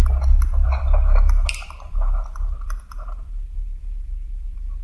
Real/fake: fake